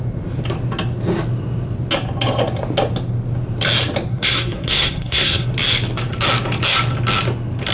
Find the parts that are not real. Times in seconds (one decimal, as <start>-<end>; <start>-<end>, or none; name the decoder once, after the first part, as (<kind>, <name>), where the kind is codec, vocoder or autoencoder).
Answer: 4.1-5.5 (codec, SNAC)